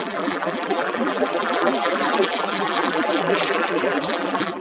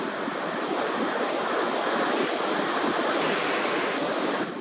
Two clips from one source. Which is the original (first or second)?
second